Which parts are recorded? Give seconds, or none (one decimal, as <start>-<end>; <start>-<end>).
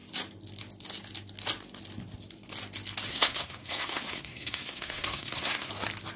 0.0-3.1; 5.7-6.2